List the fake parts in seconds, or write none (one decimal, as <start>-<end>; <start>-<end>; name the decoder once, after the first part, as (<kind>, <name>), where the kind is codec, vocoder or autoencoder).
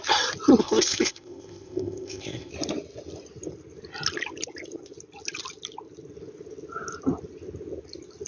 0.6-2.5 (codec, ZipCodec)